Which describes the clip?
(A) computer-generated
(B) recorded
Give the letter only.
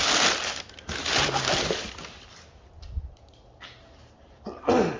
B